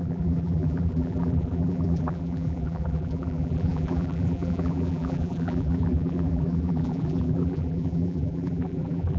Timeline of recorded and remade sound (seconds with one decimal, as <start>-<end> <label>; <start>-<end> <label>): 0.0-9.2 remade

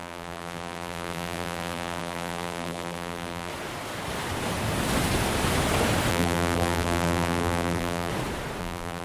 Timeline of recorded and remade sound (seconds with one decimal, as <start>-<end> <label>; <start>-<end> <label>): 0.0-3.5 remade; 3.5-6.1 recorded; 6.1-8.1 remade; 8.1-8.6 recorded; 8.6-9.0 remade

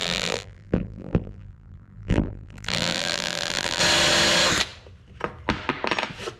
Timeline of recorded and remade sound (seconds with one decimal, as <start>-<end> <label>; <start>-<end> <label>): 0.0-3.8 remade; 3.8-6.4 recorded

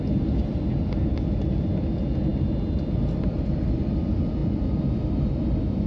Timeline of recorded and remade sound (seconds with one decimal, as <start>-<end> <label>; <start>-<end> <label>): 0.0-5.9 recorded

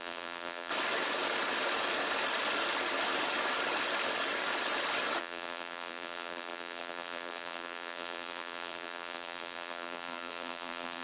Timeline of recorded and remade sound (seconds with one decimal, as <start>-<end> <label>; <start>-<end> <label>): 0.0-0.7 remade; 0.7-5.2 recorded; 5.2-11.0 remade

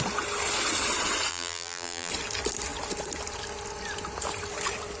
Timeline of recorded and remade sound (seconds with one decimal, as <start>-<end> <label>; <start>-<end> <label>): 0.0-1.3 recorded; 1.3-2.1 remade; 2.1-5.0 recorded